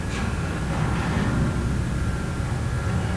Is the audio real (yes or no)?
yes